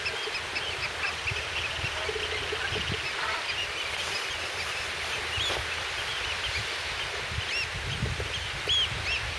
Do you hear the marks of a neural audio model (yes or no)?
no